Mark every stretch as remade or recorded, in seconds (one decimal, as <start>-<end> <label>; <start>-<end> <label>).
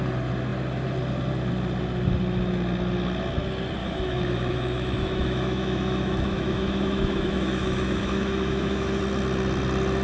0.0-3.8 recorded; 3.8-9.0 remade; 9.0-10.0 recorded